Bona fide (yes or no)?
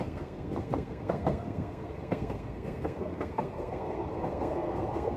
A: no